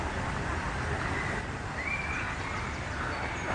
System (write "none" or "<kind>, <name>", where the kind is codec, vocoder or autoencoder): none